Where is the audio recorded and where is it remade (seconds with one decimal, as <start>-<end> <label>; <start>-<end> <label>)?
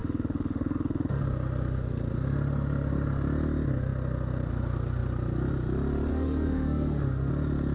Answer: 0.0-1.2 remade; 1.2-6.1 recorded; 6.1-7.3 remade; 7.3-7.7 recorded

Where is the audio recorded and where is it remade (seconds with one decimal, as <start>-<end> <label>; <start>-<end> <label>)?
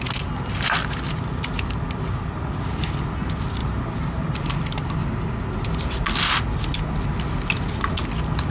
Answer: 0.0-3.6 recorded; 3.6-4.5 remade; 4.5-8.5 recorded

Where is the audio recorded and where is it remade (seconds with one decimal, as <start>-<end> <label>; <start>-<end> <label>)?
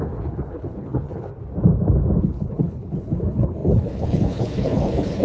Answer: 0.0-1.3 remade; 1.3-2.2 recorded; 2.2-5.2 remade